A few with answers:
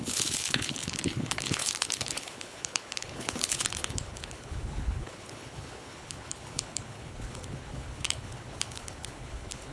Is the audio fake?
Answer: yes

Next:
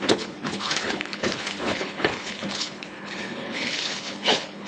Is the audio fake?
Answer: yes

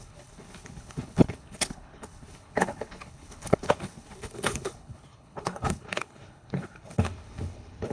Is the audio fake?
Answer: yes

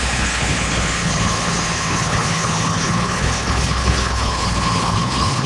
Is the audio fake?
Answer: yes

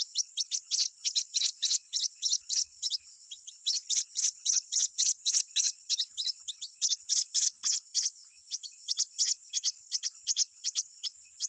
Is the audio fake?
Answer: yes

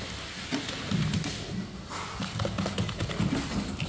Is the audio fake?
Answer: no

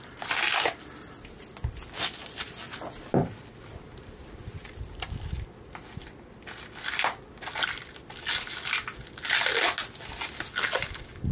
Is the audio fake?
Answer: no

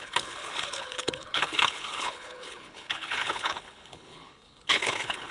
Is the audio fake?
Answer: yes